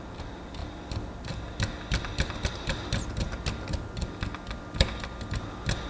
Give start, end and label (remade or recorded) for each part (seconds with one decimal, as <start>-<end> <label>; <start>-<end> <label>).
0.0-5.9 recorded